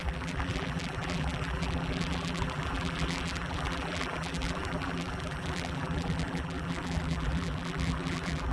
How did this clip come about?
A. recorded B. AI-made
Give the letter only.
B